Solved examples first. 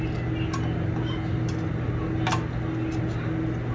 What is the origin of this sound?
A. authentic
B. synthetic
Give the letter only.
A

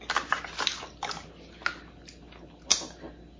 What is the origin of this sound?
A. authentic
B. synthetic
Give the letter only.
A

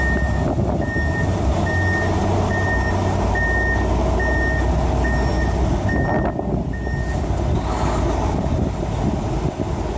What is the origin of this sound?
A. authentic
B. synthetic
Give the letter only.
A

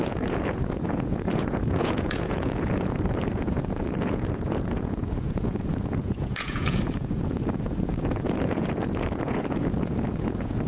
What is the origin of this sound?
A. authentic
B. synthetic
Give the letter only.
B